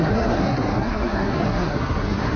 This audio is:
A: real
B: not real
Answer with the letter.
B